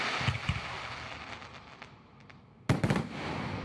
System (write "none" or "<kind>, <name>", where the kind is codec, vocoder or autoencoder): none